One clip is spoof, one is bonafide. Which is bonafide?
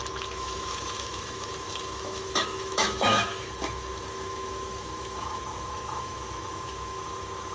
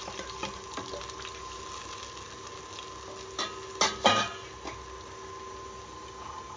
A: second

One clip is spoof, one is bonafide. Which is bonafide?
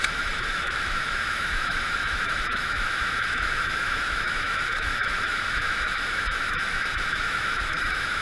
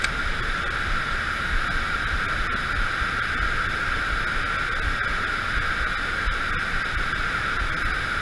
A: second